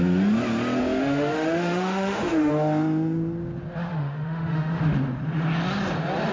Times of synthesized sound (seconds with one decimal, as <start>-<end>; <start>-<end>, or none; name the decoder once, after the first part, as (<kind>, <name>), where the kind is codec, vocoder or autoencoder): 0.8-2.5 (autoencoder, DAC-VAE); 3.9-4.8